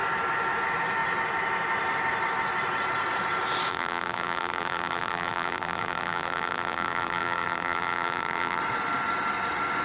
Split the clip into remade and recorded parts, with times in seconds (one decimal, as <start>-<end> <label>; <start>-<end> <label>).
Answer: 0.0-3.7 recorded; 3.7-8.6 remade; 8.6-9.8 recorded